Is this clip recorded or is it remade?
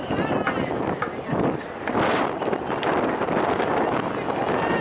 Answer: recorded